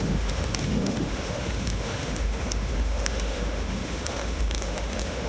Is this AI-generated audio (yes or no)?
yes